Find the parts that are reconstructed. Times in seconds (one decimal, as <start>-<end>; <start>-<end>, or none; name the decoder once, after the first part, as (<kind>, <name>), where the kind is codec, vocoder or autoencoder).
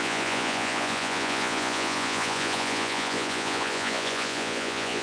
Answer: 0.0-5.0 (vocoder, Vocos)